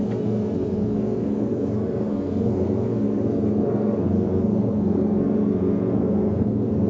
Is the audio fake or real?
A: fake